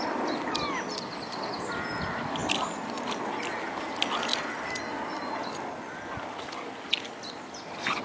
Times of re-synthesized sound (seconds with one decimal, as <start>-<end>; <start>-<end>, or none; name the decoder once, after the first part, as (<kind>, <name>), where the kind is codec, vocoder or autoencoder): none

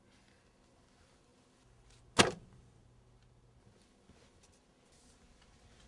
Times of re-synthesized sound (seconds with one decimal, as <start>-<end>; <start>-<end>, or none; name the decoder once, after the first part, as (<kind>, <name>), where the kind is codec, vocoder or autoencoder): none

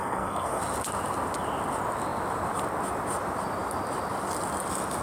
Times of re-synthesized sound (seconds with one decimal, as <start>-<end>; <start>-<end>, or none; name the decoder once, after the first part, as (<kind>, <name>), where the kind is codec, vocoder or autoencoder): 0.0-0.6 (codec, SNAC)

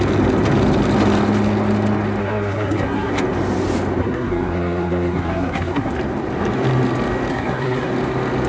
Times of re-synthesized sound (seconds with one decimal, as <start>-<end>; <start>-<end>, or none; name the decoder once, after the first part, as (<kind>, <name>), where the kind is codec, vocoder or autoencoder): 2.2-3.1 (codec, SNAC); 4.0-5.9; 7.3-7.9

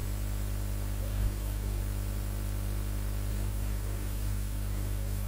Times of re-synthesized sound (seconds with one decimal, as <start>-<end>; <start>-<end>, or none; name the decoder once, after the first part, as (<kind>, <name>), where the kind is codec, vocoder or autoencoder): 1.0-1.8 (codec, DAC); 3.3-5.3